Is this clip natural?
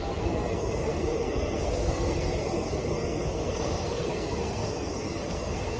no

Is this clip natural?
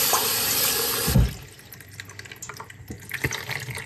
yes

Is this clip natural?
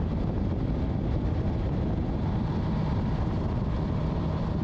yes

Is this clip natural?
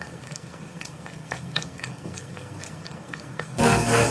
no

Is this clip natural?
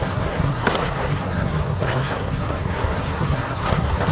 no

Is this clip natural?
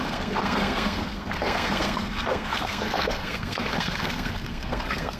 no